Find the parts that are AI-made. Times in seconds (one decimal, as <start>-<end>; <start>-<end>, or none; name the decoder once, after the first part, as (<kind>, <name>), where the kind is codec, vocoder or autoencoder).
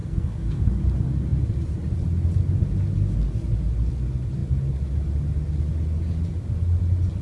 0.0-0.7 (codec, SNAC)